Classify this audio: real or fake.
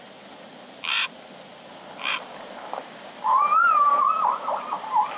real